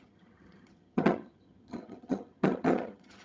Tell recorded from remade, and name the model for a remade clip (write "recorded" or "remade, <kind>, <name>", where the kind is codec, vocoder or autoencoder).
remade, vocoder, HiFi-GAN